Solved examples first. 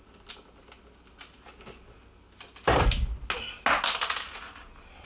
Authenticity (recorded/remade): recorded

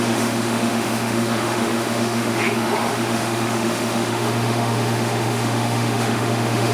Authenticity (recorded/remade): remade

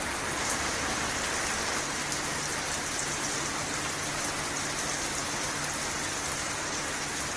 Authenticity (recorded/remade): recorded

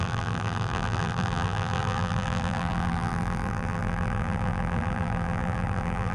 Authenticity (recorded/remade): remade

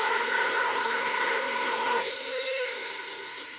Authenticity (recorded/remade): remade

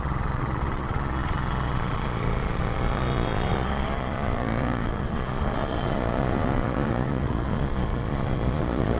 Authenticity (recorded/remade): remade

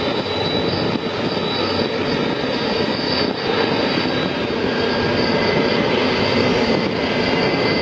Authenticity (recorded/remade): recorded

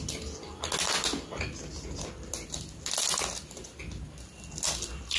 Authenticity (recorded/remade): recorded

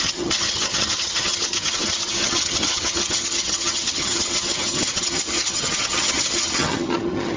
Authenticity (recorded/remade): remade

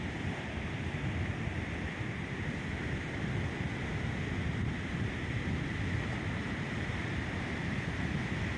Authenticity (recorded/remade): recorded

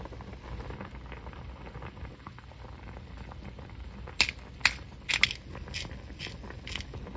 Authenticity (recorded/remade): recorded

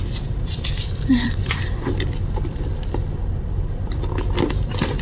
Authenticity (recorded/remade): remade